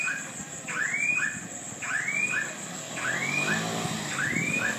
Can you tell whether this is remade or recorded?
recorded